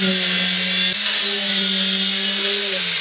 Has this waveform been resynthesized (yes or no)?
no